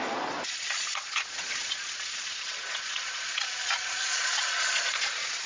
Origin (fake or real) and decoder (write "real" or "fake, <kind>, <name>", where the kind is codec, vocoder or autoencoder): fake, vocoder, Vocos